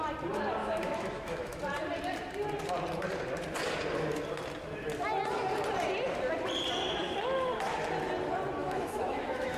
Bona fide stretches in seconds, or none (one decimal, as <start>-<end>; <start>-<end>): 0.0-0.6; 1.6-8.6